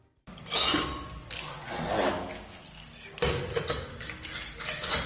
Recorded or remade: recorded